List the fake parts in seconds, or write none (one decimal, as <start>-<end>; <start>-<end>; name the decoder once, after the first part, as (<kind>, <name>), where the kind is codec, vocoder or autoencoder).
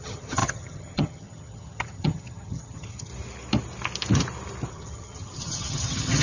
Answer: 0.0-3.1 (vocoder, HiFi-GAN); 4.7-6.2